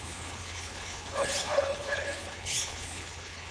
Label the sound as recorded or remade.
remade